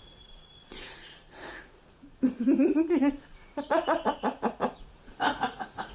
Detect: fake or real fake